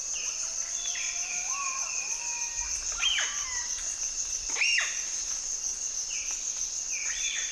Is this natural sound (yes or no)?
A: yes